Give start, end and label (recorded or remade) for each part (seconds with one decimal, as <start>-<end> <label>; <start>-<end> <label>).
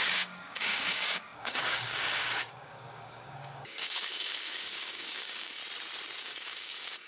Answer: 0.0-5.6 remade; 5.6-6.2 recorded; 6.2-7.1 remade